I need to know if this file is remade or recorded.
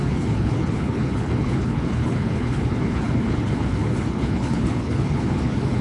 remade